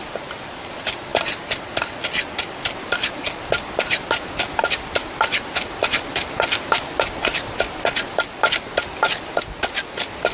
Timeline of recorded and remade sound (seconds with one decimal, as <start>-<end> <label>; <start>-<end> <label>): 0.0-10.3 recorded

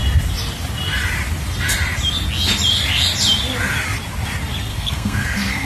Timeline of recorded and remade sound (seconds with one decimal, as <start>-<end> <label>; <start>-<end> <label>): 0.0-4.7 recorded; 4.7-5.7 remade

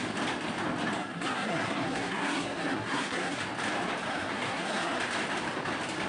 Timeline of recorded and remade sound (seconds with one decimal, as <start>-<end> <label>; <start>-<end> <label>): 0.0-1.0 recorded; 1.0-3.4 remade; 3.4-4.1 recorded; 4.1-5.0 remade; 5.0-6.1 recorded

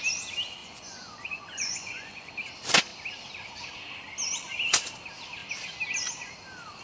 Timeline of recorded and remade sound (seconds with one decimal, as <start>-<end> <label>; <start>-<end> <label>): 0.0-0.6 recorded; 0.6-2.3 remade; 2.3-6.8 recorded

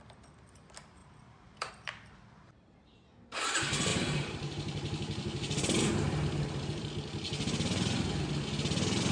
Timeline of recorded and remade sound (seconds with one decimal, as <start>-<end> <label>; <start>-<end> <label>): 0.0-1.0 recorded; 1.0-1.7 remade; 1.7-3.9 recorded; 3.9-6.9 remade; 6.9-9.1 recorded

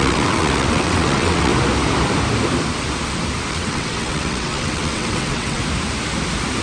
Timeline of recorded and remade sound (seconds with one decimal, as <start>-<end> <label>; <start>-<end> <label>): 0.0-1.5 remade; 1.5-3.5 recorded; 3.5-5.6 remade; 5.6-6.6 recorded